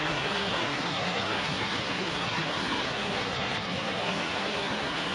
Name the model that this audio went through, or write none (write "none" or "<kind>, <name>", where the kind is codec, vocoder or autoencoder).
codec, SNAC